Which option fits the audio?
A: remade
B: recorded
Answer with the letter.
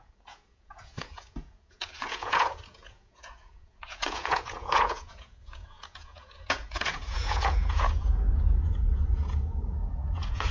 A